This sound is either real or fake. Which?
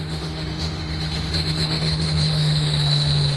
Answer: fake